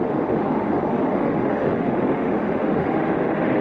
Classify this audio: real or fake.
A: fake